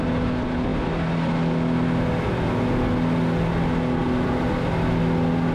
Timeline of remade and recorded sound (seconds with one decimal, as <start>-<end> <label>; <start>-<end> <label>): 0.0-5.5 recorded

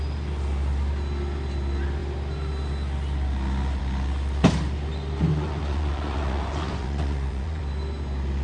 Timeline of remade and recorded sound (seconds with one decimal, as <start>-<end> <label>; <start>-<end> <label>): 0.0-5.3 recorded; 5.3-7.6 remade; 7.6-8.4 recorded

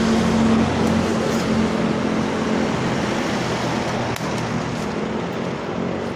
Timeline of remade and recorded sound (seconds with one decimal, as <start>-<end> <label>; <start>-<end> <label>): 0.0-6.2 recorded